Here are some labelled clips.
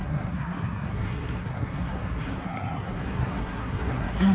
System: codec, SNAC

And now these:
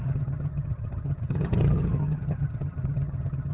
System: vocoder, HiFi-GAN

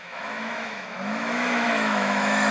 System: autoencoder, DAC-VAE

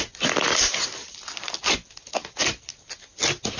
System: none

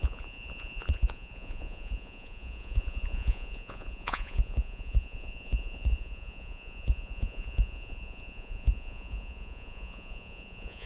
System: vocoder, Vocos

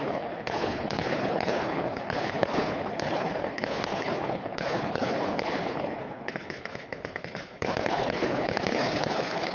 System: codec, HILCodec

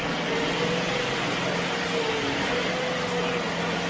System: none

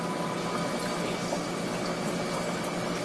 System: none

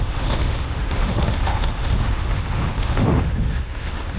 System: autoencoder, DAC-VAE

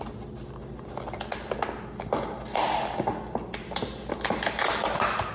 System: none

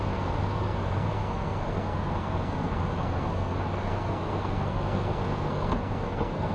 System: codec, SNAC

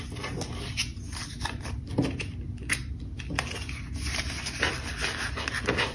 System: none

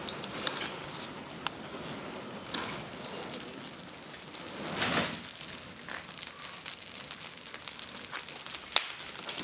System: none